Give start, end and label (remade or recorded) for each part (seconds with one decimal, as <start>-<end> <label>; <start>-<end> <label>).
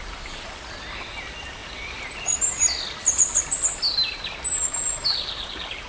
0.0-5.9 recorded